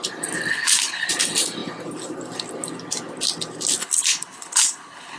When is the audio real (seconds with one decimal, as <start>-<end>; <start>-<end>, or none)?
0.0-0.5; 1.1-3.8